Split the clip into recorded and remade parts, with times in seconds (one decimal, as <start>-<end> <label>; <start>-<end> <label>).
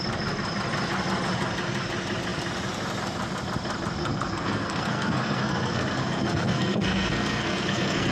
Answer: 0.0-4.0 recorded; 4.0-8.1 remade